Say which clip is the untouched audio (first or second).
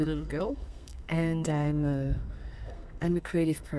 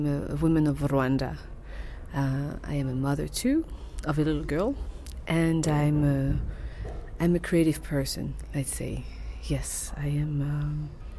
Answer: second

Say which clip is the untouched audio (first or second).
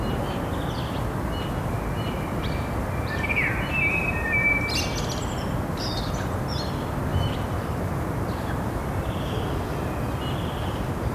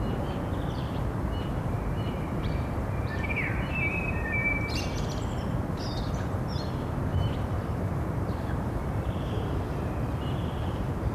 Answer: first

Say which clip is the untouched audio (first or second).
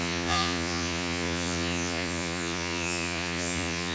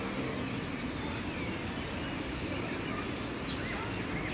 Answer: second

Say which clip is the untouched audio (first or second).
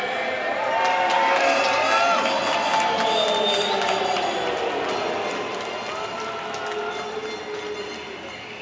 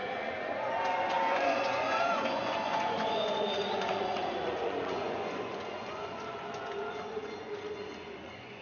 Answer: first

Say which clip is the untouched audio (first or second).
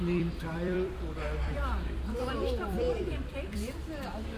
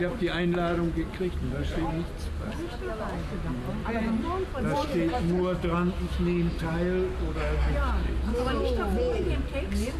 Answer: second